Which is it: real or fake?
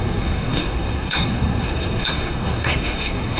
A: fake